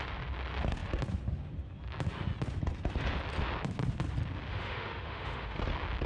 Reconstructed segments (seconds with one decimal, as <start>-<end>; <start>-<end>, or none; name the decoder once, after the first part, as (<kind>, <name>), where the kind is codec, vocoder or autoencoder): 4.5-5.6 (autoencoder, DAC-VAE)

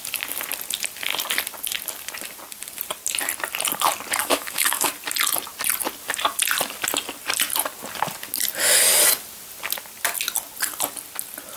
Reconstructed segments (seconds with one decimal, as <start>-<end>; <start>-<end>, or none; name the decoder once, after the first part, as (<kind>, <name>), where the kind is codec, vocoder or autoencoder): 4.2-4.9 (autoencoder, DAC-VAE)

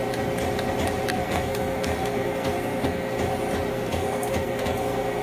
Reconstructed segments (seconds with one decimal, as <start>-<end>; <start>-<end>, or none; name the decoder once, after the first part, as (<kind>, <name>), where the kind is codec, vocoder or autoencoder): 1.1-3.1 (codec, SNAC); 3.7-5.2

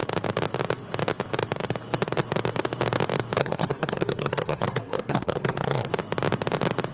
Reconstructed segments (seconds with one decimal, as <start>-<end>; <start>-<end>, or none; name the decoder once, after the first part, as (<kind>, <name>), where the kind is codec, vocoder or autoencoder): 3.4-5.9 (codec, SNAC)